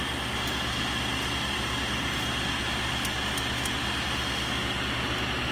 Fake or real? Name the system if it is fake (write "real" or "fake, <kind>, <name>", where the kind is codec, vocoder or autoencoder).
real